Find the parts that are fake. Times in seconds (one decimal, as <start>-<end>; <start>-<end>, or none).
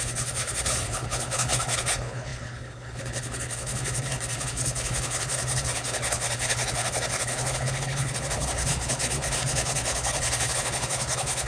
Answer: 0.0-11.5